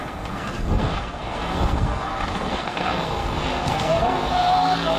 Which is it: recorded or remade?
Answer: remade